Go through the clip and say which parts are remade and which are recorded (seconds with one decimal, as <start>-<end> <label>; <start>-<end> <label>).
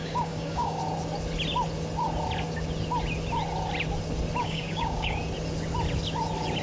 0.0-0.8 remade; 0.8-4.4 recorded; 4.4-5.2 remade; 5.2-6.6 recorded